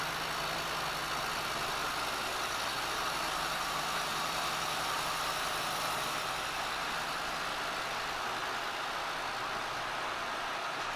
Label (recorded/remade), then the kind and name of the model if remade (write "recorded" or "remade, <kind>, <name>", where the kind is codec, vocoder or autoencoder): recorded